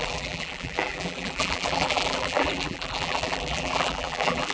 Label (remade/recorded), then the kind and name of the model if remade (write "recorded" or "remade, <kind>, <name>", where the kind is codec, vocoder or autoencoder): remade, vocoder, BigVGAN v2